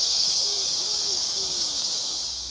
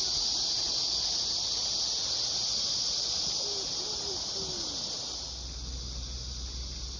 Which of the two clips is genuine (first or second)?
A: second